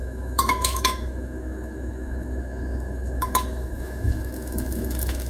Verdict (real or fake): fake